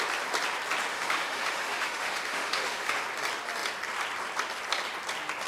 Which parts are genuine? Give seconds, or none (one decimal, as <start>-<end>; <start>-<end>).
0.0-0.9; 3.0-5.5